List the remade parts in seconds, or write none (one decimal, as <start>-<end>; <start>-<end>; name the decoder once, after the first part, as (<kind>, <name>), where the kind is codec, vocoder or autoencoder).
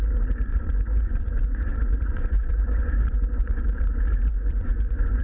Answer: 0.5-3.6 (vocoder, Vocos); 4.3-5.2